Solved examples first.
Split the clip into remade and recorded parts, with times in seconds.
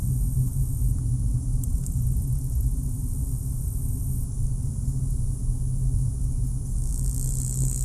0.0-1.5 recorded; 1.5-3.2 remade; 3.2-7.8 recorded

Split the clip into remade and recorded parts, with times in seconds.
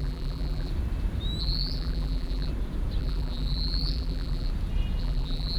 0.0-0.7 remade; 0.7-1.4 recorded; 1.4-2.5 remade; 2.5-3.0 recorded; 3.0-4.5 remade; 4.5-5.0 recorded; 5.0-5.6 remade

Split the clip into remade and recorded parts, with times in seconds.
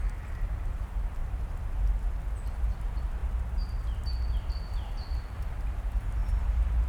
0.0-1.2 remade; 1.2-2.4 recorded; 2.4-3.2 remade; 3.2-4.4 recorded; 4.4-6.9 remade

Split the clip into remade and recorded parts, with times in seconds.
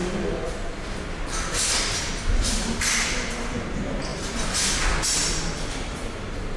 0.0-5.9 recorded; 5.9-6.6 remade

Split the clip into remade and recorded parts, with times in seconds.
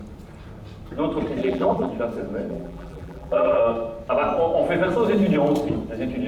0.0-1.4 recorded; 1.4-1.9 remade; 1.9-2.5 recorded; 2.5-3.6 remade; 3.6-6.3 recorded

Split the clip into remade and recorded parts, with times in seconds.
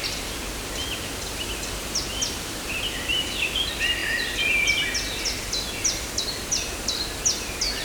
0.0-7.8 recorded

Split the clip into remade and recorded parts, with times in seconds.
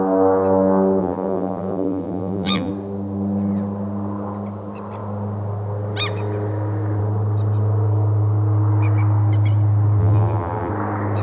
0.0-1.0 recorded; 1.0-2.7 remade; 2.7-10.0 recorded; 10.0-10.7 remade; 10.7-11.2 recorded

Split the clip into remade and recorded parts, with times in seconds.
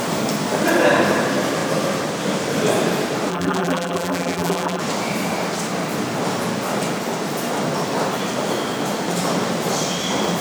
0.0-3.3 recorded; 3.3-4.8 remade; 4.8-10.4 recorded